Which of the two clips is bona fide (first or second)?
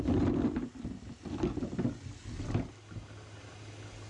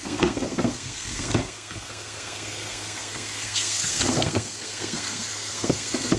first